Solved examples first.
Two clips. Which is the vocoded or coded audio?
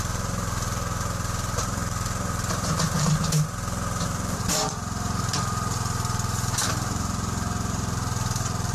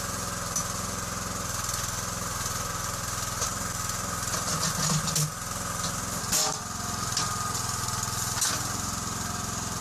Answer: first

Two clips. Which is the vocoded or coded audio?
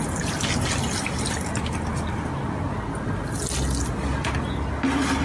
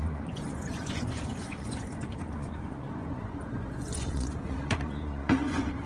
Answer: second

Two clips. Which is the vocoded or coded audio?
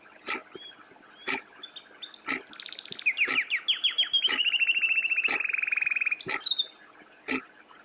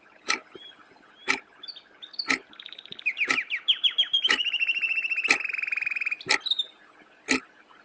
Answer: second